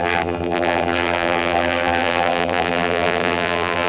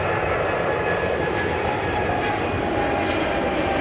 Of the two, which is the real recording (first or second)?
second